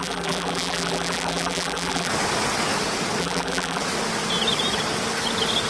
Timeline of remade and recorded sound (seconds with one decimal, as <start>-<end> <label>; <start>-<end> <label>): 0.0-2.1 remade; 2.1-3.2 recorded; 3.2-3.8 remade; 3.8-5.7 recorded